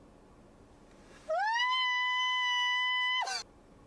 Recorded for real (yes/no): yes